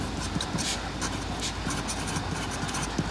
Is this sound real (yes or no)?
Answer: yes